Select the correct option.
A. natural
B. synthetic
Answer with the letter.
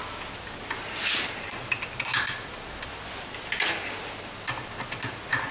A